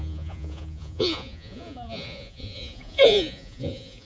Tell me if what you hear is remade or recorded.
remade